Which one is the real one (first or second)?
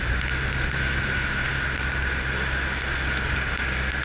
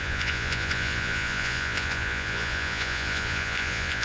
first